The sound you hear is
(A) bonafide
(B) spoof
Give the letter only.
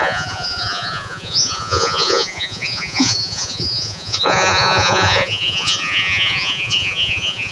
B